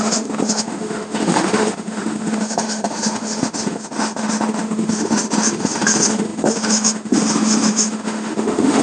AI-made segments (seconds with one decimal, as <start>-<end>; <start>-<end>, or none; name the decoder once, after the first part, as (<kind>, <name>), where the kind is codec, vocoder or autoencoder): 0.0-8.8 (autoencoder, DAC-VAE)